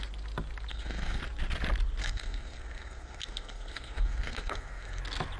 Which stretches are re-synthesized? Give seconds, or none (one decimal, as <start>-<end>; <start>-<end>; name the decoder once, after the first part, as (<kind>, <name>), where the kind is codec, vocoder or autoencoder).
0.7-1.2 (codec, SNAC); 2.0-5.0